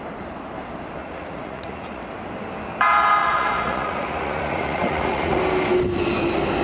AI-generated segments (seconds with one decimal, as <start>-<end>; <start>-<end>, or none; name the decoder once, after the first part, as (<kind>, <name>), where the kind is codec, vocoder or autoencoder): 1.0-2.0 (vocoder, Vocos); 3.2-5.4